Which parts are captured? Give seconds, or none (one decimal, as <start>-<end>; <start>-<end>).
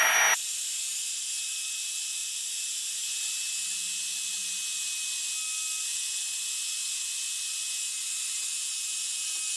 0.0-9.6